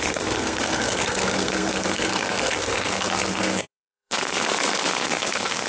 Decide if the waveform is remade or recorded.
remade